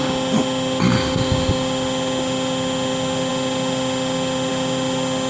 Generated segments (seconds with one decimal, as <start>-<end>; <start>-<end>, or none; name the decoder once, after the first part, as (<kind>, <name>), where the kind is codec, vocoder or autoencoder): none